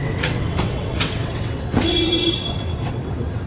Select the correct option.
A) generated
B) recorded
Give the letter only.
A